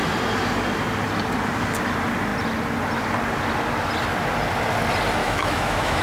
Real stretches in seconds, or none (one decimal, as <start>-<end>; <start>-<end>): 0.0-5.2